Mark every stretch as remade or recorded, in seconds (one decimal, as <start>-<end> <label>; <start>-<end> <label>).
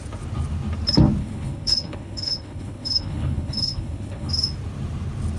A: 0.0-1.2 recorded; 1.2-4.3 remade; 4.3-5.4 recorded